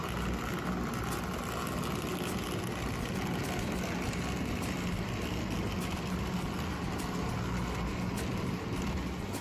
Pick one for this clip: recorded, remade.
recorded